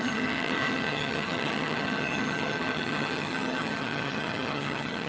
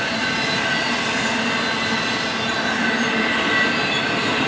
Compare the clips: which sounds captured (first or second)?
second